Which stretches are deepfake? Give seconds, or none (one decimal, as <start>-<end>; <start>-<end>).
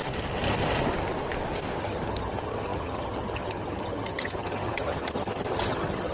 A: 1.8-6.1